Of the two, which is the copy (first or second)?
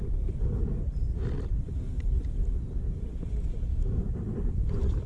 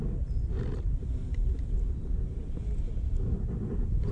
first